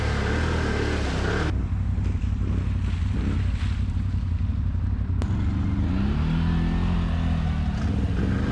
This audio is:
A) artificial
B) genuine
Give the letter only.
B